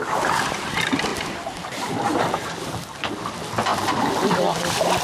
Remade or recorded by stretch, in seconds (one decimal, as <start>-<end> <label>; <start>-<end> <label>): 0.0-5.0 recorded